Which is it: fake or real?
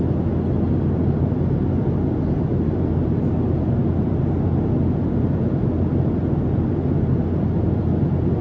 real